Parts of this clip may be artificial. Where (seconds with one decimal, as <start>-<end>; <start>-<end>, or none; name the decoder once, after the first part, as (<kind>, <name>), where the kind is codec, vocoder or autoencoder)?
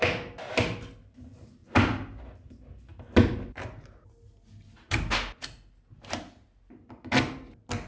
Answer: none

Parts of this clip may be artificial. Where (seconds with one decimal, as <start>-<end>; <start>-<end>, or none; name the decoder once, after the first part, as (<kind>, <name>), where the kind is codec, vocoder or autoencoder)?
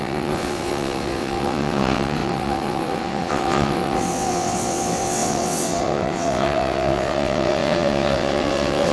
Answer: 0.0-8.9 (vocoder, WaveNeXt)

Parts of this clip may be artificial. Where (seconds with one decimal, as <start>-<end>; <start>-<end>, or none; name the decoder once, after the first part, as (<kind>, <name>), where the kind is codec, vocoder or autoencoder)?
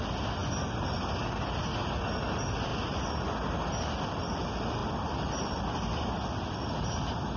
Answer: 0.0-0.4 (vocoder, BigVGAN v2); 2.2-2.7; 4.0-7.4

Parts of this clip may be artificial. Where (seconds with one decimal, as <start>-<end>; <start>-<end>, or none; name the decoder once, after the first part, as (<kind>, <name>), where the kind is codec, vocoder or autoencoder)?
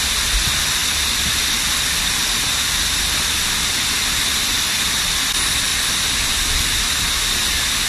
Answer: 0.8-5.2 (vocoder, BigVGAN v2)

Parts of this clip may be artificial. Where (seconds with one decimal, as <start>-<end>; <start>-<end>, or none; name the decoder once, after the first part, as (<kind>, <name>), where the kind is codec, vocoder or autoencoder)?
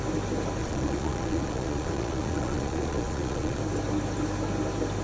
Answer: 0.6-3.6 (vocoder, Vocos)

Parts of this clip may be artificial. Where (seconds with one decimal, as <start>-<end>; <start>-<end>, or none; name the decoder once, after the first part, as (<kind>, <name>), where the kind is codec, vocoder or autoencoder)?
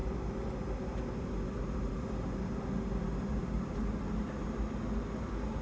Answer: none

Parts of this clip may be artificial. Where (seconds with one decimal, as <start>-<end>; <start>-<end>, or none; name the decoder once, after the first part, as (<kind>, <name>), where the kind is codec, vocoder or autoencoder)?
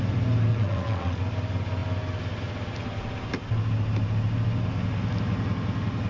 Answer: 0.5-1.2 (vocoder, WaveNeXt)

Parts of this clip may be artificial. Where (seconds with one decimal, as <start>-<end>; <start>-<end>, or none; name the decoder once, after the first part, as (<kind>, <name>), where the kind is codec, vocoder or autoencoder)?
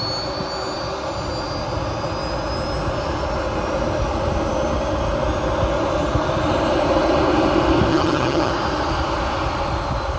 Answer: 7.9-8.5 (vocoder, HiFi-GAN)